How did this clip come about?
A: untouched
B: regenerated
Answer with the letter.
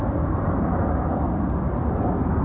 A